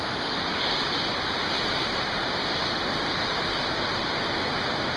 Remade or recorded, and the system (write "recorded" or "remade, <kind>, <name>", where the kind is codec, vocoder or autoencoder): recorded